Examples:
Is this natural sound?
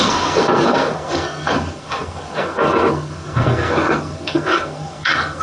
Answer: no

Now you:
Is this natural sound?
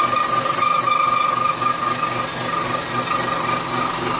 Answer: yes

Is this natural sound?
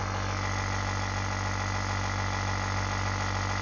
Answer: yes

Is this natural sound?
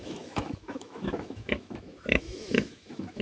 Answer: no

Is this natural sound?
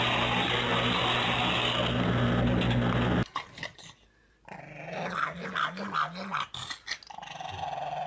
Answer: yes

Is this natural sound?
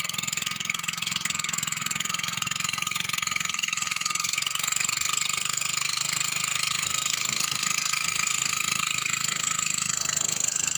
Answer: no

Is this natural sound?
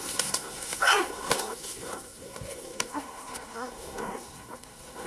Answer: no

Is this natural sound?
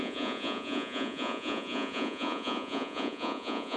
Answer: no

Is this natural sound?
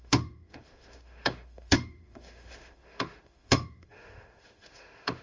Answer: no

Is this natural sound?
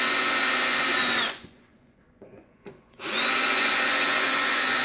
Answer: no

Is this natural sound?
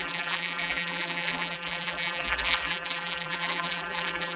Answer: no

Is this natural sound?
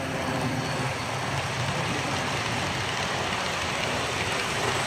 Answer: yes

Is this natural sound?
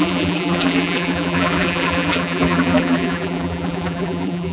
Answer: no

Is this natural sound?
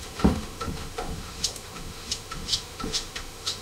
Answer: no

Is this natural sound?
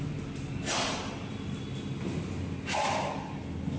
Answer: yes